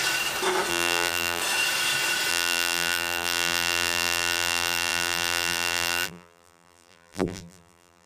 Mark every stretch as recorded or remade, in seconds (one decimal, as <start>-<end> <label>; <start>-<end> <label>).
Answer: 0.0-0.7 recorded; 0.7-1.4 remade; 1.4-2.3 recorded; 2.3-8.1 remade